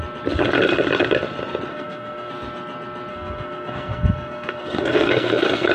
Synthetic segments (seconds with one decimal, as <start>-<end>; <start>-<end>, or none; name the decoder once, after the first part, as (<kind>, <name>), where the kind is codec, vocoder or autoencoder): 1.7-2.3 (codec, SNAC); 3.1-5.7